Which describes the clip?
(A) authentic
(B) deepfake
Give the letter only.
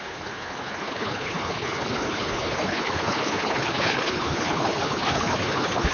B